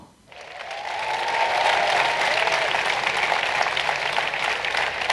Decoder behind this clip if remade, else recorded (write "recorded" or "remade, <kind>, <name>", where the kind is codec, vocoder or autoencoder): recorded